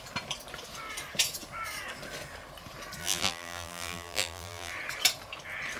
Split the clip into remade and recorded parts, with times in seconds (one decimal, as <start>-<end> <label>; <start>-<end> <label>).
0.0-3.0 recorded; 3.0-4.7 remade; 4.7-5.8 recorded